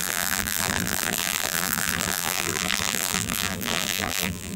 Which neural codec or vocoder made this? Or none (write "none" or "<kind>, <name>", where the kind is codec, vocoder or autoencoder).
vocoder, BigVGAN v2